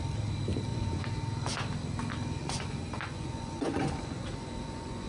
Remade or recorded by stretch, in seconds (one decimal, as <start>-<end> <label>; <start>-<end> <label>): 0.0-0.7 recorded; 0.7-1.2 remade; 1.2-2.4 recorded; 2.4-5.1 remade